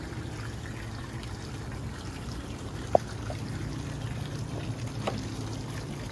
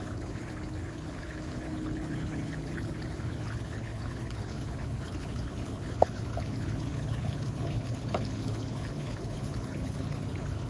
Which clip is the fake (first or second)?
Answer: second